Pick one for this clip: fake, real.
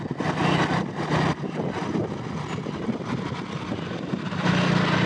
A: real